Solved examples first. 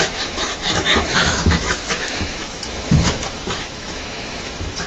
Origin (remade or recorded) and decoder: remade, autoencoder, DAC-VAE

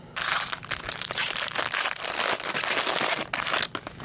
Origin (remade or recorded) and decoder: recorded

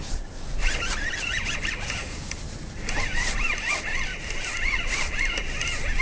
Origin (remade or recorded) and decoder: recorded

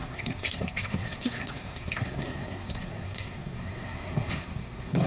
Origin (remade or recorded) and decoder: remade, codec, SNAC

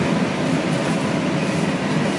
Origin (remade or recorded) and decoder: recorded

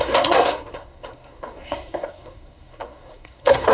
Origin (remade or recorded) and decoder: remade, codec, SNAC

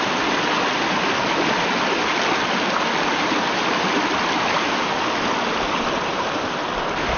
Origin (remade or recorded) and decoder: recorded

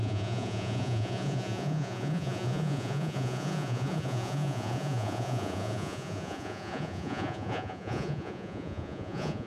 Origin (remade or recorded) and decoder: remade, vocoder, Vocos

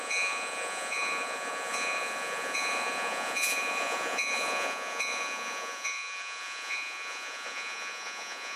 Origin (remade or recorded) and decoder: remade, vocoder, Vocos